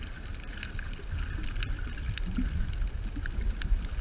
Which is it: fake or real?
real